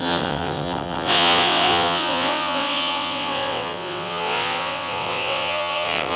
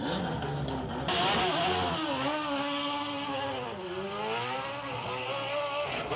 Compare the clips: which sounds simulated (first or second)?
first